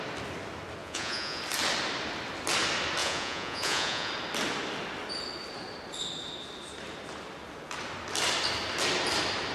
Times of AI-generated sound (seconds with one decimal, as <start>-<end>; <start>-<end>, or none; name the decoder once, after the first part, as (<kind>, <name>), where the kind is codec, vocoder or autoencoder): 0.8-1.4 (vocoder, Vocos); 3.0-4.1